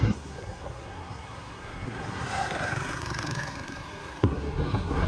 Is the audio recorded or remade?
remade